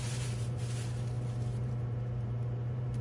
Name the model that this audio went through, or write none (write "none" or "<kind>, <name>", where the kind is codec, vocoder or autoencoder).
vocoder, BigVGAN v2